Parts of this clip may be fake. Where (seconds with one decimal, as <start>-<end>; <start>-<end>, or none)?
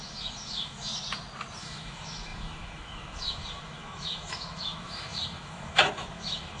0.0-0.9; 1.6-6.6